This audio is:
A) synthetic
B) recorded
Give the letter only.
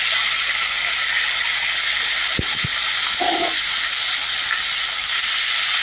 B